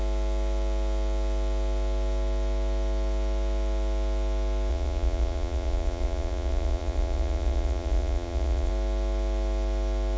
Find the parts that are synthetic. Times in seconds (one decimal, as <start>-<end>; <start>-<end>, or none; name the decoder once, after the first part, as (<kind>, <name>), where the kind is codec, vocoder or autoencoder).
4.7-8.7 (vocoder, Vocos)